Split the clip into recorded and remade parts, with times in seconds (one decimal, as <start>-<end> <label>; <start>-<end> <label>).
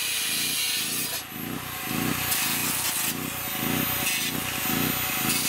0.0-5.5 recorded